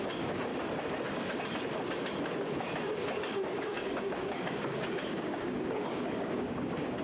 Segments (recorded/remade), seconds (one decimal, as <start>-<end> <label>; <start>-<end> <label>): 0.0-0.5 remade; 0.5-2.9 recorded; 2.9-7.0 remade